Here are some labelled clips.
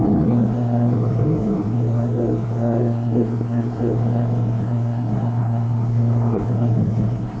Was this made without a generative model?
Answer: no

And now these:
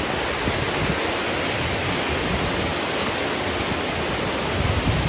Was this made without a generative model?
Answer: yes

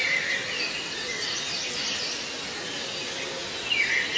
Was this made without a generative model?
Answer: yes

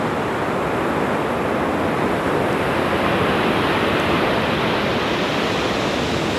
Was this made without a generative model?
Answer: yes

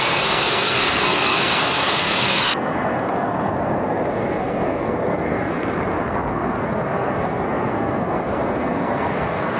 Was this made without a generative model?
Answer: no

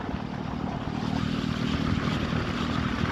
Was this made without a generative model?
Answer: yes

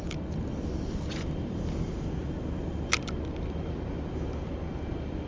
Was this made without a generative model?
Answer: yes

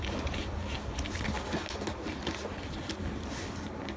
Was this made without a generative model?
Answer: yes